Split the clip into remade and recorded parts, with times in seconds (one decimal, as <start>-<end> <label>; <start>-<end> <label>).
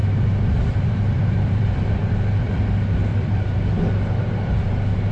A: 0.0-2.6 remade; 2.6-3.1 recorded; 3.1-3.8 remade; 3.8-5.1 recorded